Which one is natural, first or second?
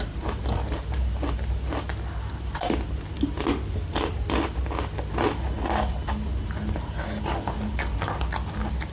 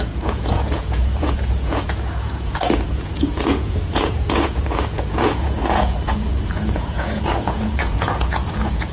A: first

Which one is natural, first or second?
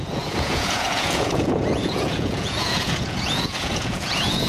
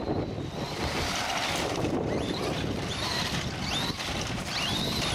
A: second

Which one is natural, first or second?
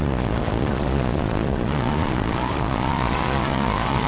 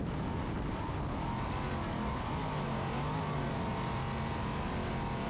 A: second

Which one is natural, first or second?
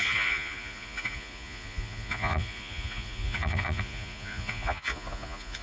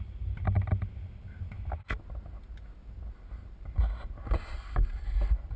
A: second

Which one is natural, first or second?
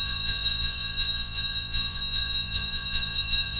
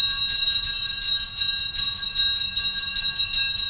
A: second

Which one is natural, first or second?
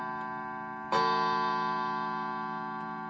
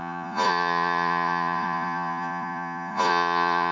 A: first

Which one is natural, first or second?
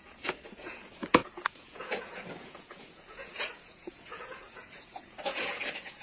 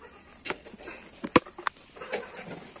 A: second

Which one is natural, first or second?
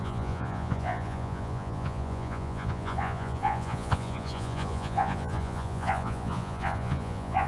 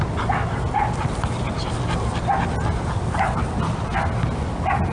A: second